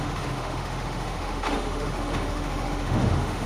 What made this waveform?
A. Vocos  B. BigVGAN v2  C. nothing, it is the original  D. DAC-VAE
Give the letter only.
D